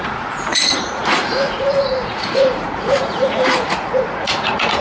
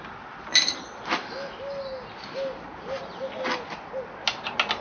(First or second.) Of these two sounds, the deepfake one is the first